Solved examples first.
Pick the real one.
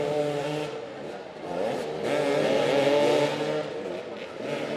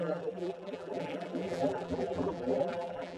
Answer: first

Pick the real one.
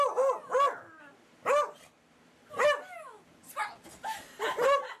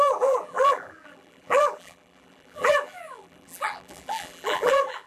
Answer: first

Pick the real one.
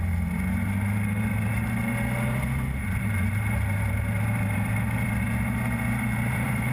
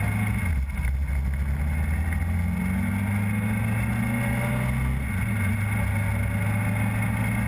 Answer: second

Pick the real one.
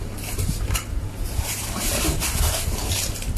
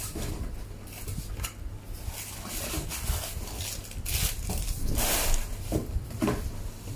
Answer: second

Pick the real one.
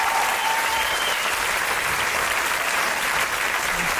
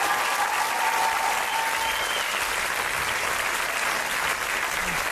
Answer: second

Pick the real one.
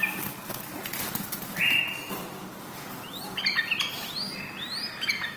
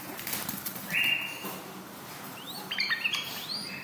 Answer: first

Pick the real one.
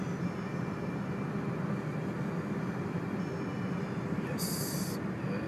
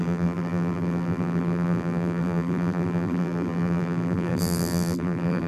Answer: first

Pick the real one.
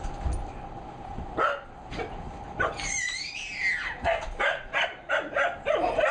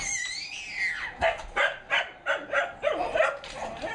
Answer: second